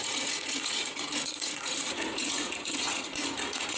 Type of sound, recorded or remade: remade